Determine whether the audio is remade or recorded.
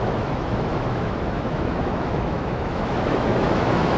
remade